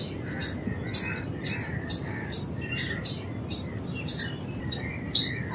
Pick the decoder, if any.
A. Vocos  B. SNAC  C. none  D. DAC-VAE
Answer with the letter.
C